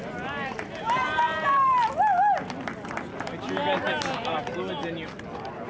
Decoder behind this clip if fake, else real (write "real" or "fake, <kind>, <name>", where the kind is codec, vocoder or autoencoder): real